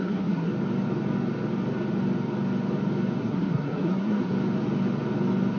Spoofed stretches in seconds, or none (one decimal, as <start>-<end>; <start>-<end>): 0.0-0.5; 3.2-4.3